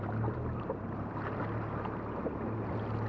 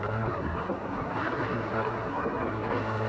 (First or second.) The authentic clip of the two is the first